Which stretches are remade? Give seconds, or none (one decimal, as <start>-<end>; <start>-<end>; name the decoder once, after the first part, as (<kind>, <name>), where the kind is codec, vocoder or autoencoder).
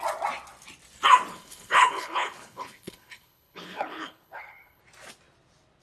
1.3-4.8 (codec, HILCodec)